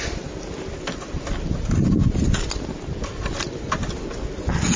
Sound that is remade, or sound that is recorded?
recorded